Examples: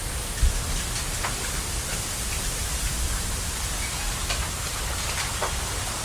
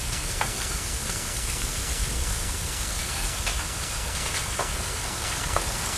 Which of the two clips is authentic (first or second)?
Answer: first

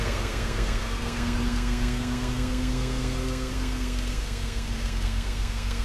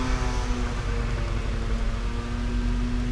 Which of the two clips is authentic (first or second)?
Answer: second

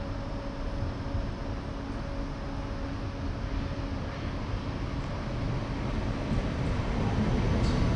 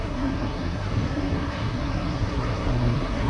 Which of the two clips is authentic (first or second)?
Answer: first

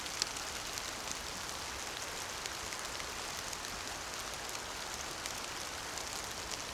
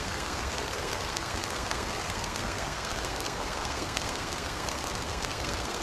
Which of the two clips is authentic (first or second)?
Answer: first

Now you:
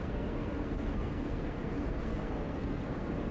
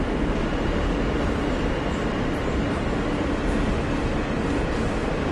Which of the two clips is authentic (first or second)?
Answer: second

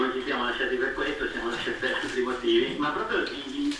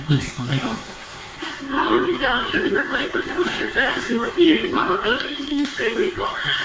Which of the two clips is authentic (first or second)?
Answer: first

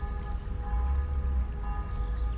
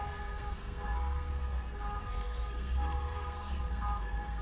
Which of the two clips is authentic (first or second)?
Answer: first